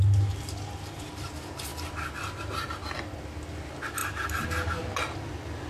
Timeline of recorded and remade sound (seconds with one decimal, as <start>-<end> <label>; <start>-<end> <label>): 0.0-5.7 recorded